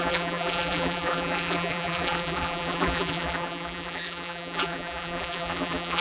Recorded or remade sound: remade